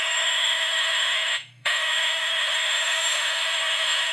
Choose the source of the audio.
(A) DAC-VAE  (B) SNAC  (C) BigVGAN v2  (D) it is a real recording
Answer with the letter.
A